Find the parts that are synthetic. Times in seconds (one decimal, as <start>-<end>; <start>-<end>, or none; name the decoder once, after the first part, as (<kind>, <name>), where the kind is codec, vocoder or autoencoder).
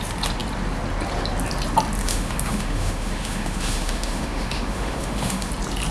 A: 2.0-5.5 (autoencoder, DAC-VAE)